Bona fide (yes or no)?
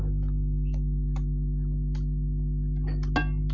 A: yes